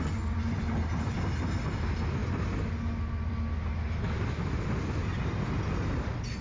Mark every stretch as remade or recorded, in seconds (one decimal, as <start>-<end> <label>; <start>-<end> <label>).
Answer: 0.0-6.4 recorded